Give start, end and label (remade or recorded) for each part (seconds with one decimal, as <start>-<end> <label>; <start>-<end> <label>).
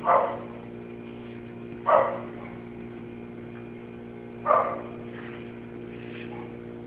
0.0-1.2 recorded; 1.2-3.0 remade; 3.0-6.9 recorded